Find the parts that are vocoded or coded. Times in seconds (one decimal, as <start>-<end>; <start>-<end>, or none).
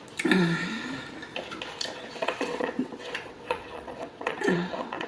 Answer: 2.0-5.1